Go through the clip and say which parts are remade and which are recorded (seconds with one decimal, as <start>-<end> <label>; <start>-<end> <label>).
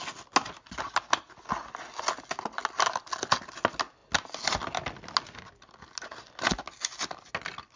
0.0-7.8 recorded